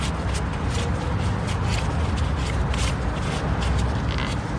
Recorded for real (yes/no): yes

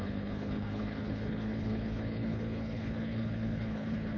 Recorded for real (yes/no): no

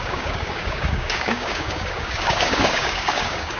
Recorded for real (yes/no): no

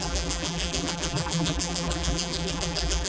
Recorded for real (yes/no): no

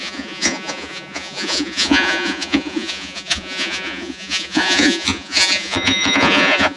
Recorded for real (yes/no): no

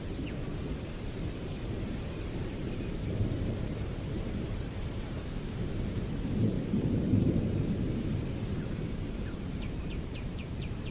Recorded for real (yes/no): no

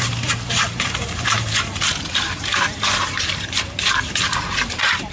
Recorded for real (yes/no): no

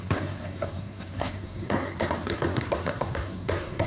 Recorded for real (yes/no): no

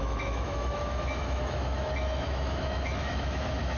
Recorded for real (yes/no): no